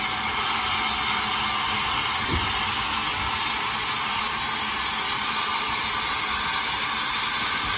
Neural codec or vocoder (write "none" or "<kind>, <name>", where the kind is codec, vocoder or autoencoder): none